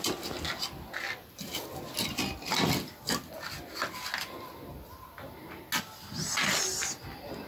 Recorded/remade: recorded